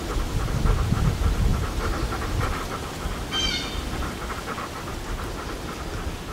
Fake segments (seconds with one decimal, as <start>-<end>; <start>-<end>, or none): 1.5-2.5